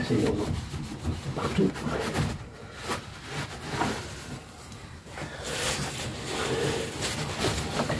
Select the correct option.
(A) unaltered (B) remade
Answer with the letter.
A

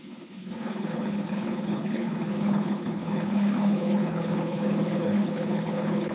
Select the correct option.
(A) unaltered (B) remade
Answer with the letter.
B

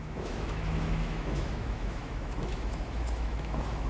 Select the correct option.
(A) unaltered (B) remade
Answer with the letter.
B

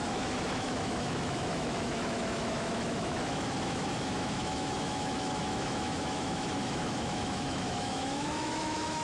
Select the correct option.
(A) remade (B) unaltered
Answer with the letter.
A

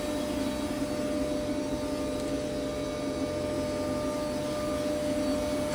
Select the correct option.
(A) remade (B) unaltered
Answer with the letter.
B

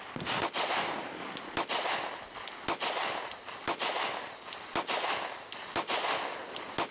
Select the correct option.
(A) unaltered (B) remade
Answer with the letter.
A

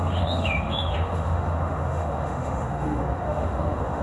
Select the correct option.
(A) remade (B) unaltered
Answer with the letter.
A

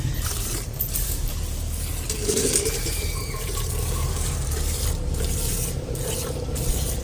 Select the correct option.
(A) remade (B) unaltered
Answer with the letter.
A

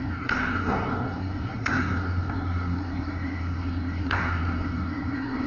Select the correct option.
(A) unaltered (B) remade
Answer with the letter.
B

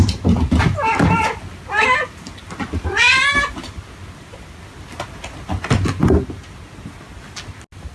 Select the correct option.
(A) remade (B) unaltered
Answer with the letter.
B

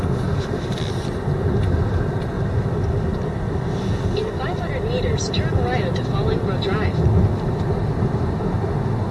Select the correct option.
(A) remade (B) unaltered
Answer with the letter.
B